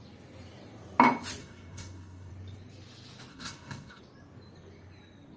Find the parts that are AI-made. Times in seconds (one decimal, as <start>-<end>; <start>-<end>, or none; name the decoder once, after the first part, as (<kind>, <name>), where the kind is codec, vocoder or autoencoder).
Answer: 1.4-2.3 (codec, SNAC); 3.3-4.0